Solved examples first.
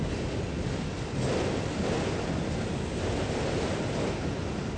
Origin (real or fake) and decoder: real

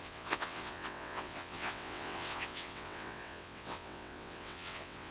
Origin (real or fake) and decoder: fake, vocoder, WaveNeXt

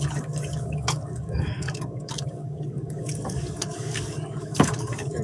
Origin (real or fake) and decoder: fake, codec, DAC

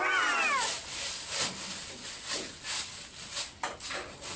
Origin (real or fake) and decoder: real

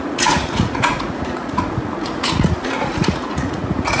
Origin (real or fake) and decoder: fake, vocoder, Vocos